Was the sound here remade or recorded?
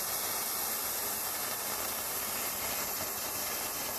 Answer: recorded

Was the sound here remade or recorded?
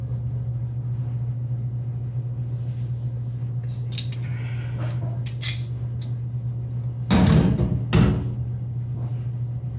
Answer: recorded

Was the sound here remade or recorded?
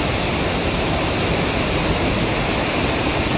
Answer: recorded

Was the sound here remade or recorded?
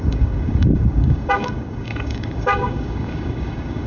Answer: remade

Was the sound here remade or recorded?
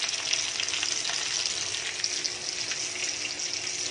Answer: recorded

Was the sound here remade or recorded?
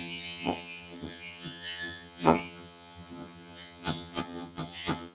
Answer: remade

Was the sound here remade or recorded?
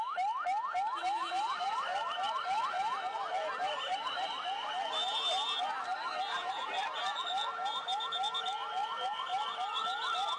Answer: recorded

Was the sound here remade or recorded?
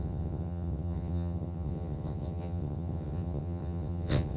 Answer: remade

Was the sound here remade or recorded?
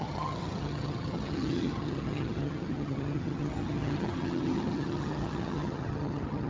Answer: remade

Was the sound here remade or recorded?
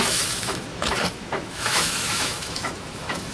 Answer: remade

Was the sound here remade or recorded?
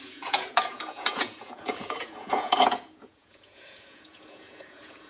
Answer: remade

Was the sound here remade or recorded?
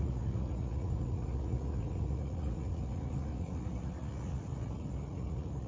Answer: remade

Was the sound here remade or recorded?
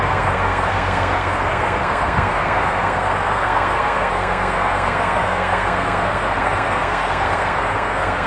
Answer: remade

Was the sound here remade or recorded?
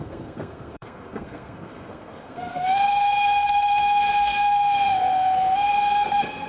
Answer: remade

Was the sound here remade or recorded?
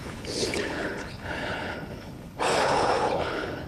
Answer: remade